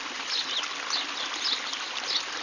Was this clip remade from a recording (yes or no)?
no